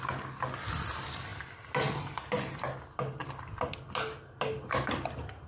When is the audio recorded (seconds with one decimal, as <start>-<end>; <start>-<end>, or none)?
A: 0.0-5.5